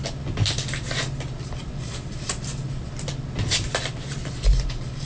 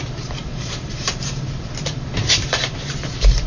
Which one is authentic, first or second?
first